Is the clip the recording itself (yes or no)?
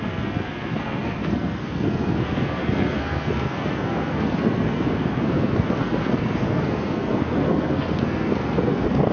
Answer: no